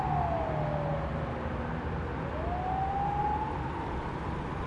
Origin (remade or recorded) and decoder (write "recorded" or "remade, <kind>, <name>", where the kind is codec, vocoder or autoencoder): recorded